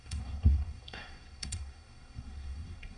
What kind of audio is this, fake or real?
fake